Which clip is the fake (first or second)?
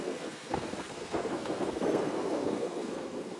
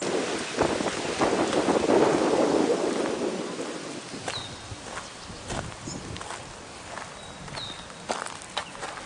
first